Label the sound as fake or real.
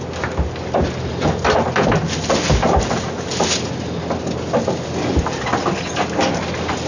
real